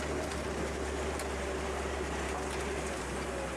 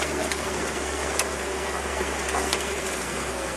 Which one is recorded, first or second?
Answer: first